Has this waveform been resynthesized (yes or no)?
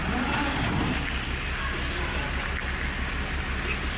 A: no